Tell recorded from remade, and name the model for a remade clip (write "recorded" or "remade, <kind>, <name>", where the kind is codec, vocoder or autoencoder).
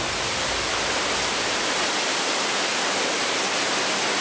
recorded